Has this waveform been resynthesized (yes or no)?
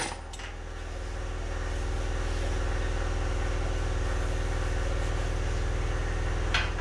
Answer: no